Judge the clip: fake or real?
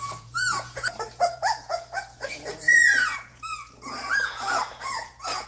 fake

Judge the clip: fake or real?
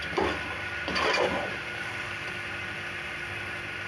real